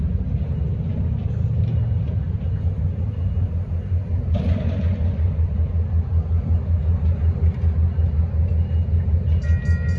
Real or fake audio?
real